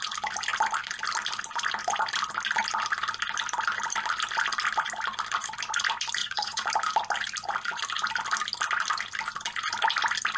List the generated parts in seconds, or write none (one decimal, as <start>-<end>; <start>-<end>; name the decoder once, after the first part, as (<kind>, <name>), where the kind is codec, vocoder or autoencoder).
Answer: 6.2-6.7 (vocoder, Vocos)